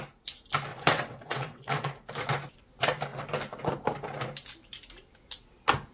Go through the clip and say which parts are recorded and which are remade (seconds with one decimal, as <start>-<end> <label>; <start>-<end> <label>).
0.0-0.7 recorded; 0.7-1.9 remade; 1.9-5.9 recorded